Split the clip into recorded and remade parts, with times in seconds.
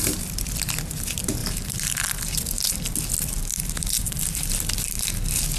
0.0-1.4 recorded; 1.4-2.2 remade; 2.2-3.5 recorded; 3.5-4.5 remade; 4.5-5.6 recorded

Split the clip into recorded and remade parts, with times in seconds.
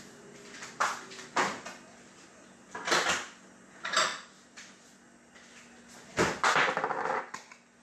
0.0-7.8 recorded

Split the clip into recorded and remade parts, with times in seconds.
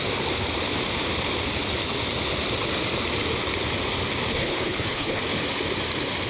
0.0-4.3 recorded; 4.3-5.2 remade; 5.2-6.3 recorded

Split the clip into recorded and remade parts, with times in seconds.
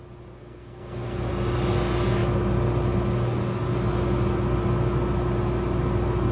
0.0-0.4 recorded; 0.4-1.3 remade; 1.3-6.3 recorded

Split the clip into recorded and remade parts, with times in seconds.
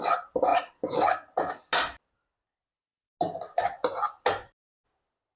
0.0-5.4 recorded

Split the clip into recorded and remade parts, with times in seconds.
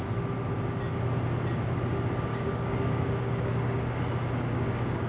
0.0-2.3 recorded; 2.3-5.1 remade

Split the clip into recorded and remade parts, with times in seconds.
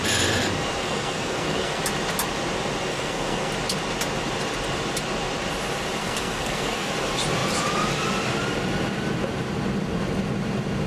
0.0-0.8 recorded; 0.8-1.8 remade; 1.8-2.9 recorded; 2.9-3.5 remade; 3.5-6.0 recorded; 6.0-6.9 remade; 6.9-10.9 recorded